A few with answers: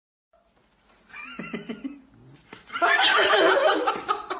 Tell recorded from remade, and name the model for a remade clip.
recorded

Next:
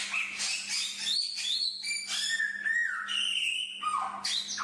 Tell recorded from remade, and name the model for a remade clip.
recorded